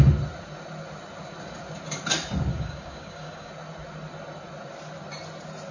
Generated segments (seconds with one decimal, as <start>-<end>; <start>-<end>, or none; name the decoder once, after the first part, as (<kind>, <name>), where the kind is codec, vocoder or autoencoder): 2.5-3.5 (codec, DAC)

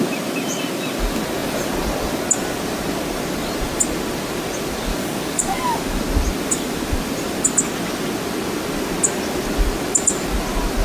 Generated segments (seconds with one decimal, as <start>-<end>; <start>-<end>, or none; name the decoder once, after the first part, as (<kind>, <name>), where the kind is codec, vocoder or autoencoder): 4.9-5.9 (codec, DAC)

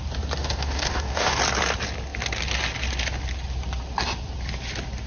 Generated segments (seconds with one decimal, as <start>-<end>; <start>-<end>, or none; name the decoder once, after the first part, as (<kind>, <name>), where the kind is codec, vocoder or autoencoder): 0.4-1.4 (codec, DAC)

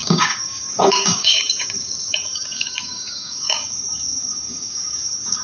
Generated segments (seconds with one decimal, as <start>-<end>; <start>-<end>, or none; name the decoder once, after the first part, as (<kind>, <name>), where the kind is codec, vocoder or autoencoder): 0.0-5.4 (codec, DAC)